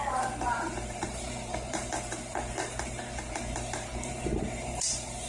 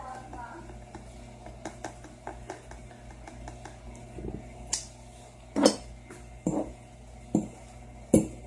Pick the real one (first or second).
second